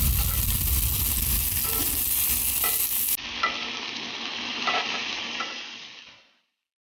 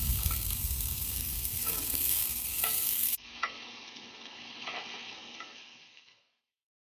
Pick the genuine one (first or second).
first